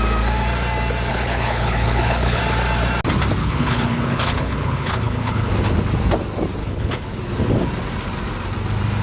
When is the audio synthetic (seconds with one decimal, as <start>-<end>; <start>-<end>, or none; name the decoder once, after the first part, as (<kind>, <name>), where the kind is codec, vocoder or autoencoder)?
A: 1.1-2.4 (codec, HILCodec); 3.4-5.5; 6.6-7.1